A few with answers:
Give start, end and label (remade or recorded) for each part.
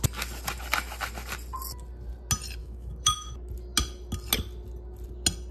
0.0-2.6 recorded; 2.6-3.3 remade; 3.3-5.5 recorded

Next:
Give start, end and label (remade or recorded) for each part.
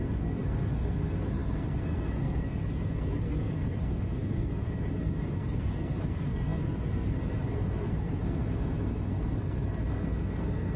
0.0-10.8 remade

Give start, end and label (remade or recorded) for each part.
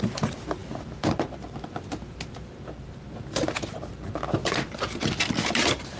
0.0-6.0 recorded